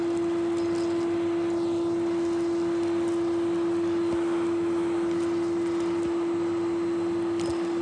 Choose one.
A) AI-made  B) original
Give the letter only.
B